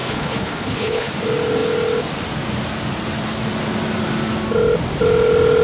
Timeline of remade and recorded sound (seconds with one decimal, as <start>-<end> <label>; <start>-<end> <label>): 0.0-1.1 remade; 1.1-5.6 recorded